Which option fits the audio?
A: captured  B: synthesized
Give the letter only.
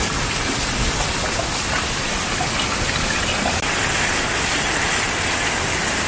A